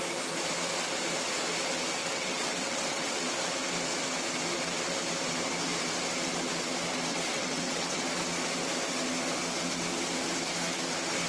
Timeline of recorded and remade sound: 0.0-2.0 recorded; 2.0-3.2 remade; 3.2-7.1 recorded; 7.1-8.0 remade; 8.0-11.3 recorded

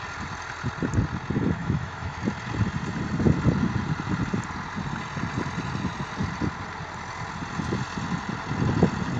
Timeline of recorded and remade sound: 0.0-1.6 recorded; 1.6-2.2 remade; 2.2-9.2 recorded

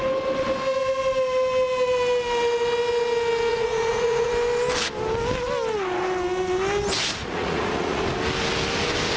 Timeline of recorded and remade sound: 0.0-3.5 recorded; 3.5-4.3 remade; 4.3-7.2 recorded; 7.2-8.0 remade; 8.0-9.2 recorded

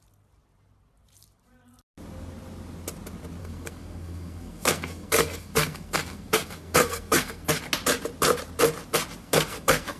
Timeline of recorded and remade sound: 0.0-3.4 recorded; 3.4-7.6 remade; 7.6-9.2 recorded; 9.2-10.0 remade

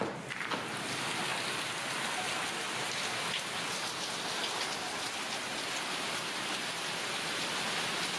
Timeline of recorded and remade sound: 0.0-8.2 recorded

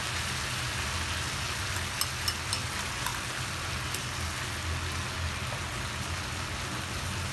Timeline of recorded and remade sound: 0.0-7.3 recorded